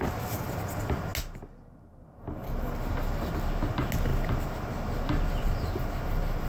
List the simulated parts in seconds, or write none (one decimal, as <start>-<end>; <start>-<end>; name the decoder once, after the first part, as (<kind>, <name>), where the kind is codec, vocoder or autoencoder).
none